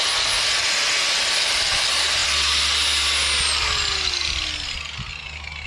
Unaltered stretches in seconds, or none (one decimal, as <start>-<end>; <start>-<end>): 0.0-5.7